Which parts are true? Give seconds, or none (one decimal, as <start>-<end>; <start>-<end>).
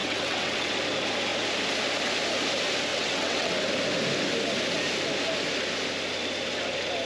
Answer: 0.7-2.9; 3.5-7.1